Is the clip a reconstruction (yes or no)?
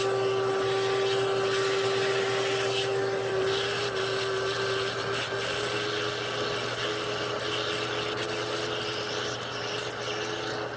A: no